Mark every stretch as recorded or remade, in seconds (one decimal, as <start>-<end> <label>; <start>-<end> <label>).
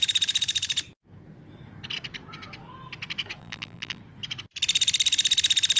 0.0-3.4 recorded; 3.4-4.0 remade; 4.0-5.8 recorded